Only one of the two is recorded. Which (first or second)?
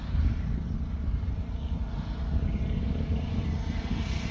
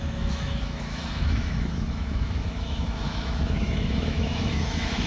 first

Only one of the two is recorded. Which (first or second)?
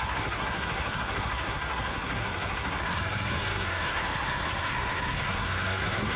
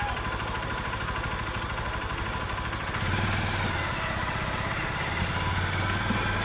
second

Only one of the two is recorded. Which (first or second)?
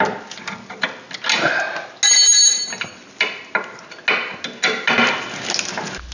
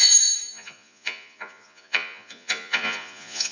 first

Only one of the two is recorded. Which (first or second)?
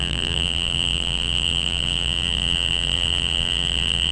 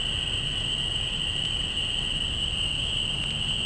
second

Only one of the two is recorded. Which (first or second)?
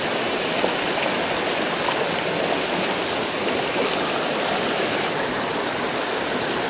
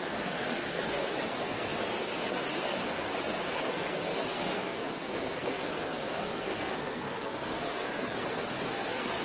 first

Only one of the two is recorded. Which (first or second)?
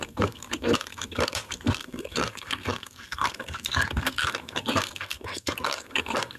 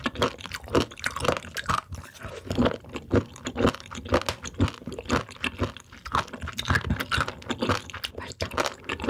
second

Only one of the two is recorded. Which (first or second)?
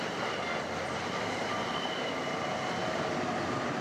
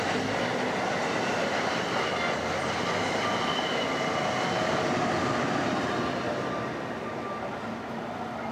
second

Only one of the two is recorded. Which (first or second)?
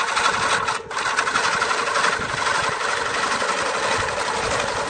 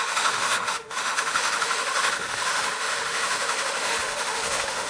first